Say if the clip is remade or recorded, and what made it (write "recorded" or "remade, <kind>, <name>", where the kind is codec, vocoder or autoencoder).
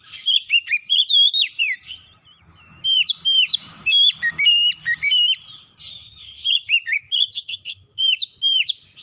remade, vocoder, BigVGAN v2